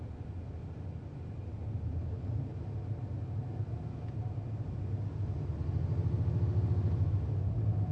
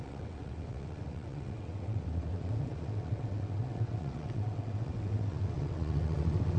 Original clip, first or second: first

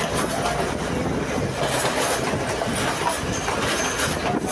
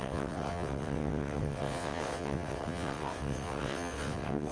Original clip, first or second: first